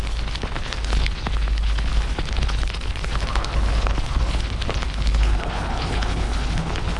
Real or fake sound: fake